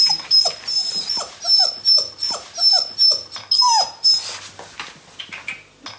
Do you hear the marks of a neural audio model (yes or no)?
no